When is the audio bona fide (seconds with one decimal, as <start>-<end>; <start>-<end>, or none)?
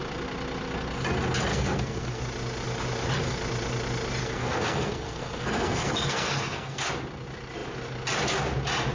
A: 0.0-1.5; 2.2-4.2; 6.9-8.9